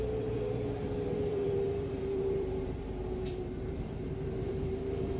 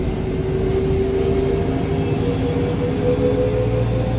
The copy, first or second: first